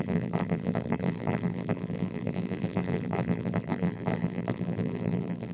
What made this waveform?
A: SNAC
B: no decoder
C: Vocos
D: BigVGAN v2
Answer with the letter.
D